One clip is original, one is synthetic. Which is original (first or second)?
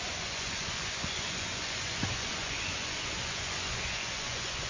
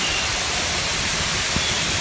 second